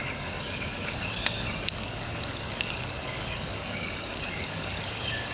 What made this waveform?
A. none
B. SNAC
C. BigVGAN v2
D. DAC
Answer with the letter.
D